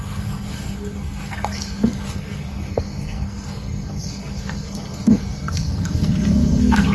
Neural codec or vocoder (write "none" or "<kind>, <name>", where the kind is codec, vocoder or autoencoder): codec, SNAC